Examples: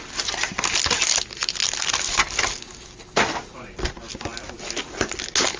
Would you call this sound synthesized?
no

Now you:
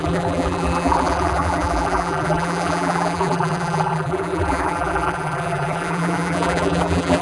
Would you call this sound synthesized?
yes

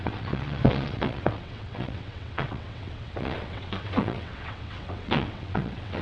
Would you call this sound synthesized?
yes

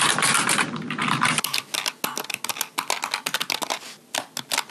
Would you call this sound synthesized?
no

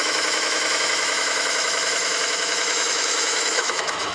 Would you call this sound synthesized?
yes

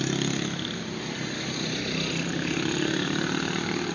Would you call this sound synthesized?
no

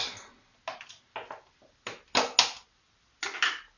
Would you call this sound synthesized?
no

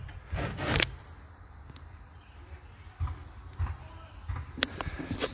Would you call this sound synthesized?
no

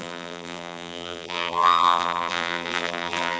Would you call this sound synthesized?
yes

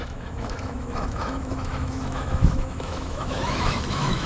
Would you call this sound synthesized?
yes